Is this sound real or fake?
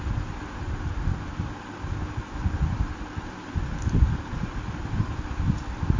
real